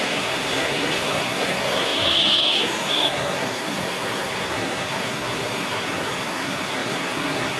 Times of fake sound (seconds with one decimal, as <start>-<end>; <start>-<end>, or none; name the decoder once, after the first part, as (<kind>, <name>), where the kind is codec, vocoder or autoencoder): 0.0-7.6 (codec, SNAC)